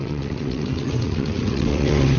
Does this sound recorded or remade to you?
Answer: remade